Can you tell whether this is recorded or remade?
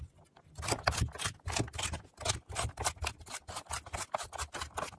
recorded